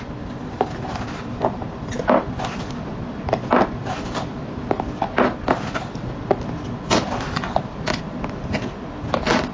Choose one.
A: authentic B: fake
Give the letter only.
A